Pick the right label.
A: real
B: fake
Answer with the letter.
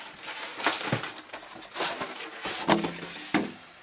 A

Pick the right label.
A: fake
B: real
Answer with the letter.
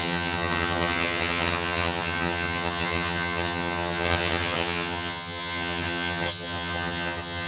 A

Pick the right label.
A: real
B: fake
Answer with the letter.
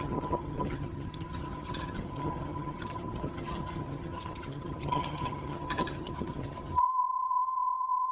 B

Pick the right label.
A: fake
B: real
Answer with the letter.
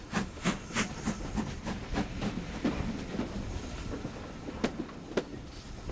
B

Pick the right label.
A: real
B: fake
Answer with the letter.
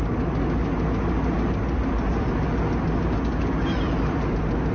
A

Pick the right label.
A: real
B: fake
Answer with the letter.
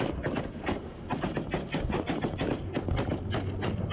A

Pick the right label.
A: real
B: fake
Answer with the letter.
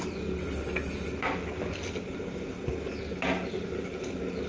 A